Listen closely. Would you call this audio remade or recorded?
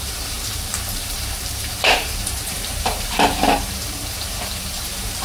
remade